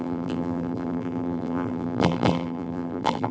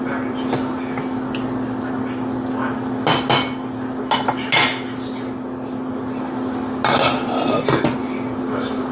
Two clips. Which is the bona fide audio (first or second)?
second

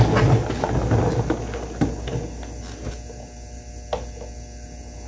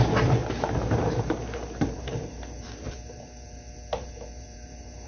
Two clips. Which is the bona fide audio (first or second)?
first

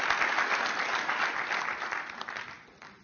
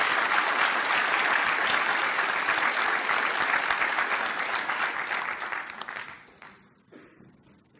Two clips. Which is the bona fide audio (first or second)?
first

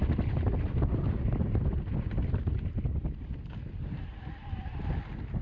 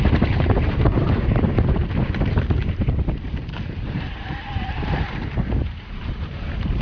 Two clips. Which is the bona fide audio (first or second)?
first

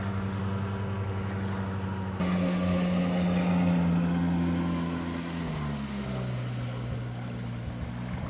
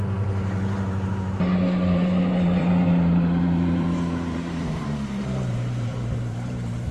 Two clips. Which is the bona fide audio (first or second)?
first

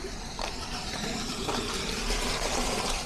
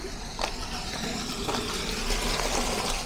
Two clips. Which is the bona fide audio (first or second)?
second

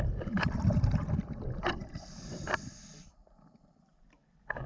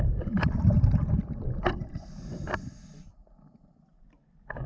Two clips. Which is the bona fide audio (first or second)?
second